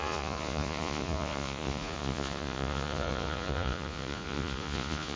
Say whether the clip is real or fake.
fake